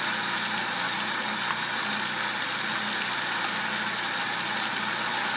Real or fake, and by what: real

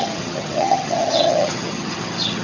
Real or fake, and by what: fake, vocoder, HiFi-GAN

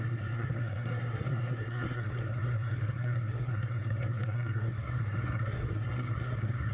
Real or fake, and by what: fake, codec, SNAC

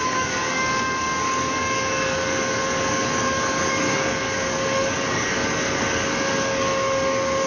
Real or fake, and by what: fake, codec, DAC